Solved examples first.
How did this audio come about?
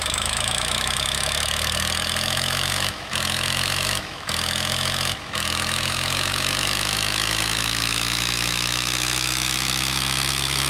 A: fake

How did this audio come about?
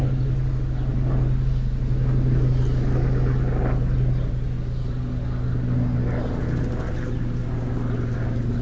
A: real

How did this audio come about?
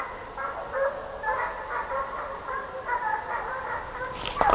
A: real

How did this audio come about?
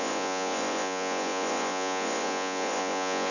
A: fake